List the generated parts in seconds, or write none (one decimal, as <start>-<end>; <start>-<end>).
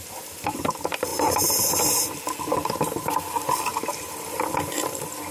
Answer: 0.0-1.1; 2.5-3.7